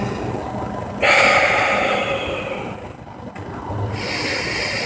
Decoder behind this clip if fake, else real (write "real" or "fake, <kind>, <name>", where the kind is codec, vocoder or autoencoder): real